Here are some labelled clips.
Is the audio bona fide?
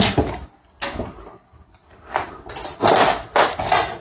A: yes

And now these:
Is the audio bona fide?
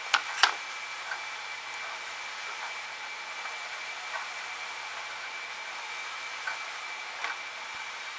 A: yes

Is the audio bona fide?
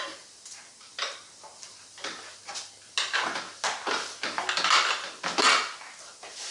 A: yes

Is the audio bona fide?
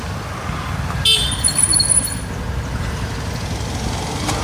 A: yes